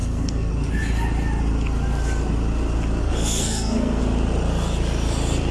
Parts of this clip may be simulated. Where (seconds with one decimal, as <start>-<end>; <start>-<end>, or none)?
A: 0.0-0.5; 3.0-4.0